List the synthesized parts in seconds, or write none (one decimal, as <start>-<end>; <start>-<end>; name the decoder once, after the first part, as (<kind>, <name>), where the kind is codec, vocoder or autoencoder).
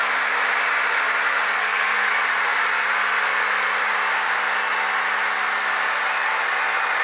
1.6-2.1 (codec, SNAC)